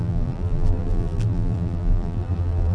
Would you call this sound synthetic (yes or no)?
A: yes